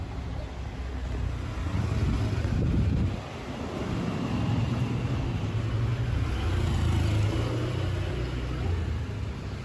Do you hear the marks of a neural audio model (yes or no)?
no